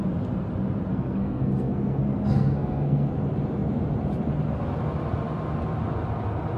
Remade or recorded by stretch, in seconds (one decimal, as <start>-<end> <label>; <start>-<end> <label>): 0.0-0.9 recorded; 0.9-3.1 remade; 3.1-6.6 recorded

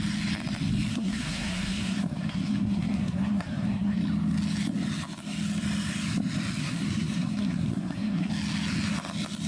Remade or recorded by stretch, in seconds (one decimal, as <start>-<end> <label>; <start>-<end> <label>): 0.0-0.9 recorded; 0.9-4.0 remade; 4.0-6.6 recorded; 6.6-8.3 remade; 8.3-9.5 recorded